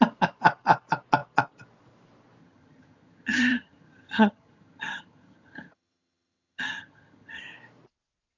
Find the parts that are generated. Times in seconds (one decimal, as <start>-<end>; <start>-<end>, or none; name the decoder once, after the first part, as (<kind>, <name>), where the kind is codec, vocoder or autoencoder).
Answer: 2.4-7.4 (vocoder, HiFi-GAN)